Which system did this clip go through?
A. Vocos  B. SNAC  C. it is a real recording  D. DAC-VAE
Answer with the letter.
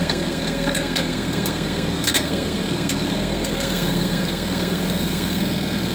B